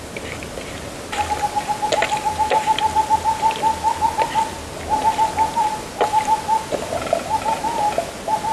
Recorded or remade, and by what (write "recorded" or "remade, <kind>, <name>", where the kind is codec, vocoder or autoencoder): recorded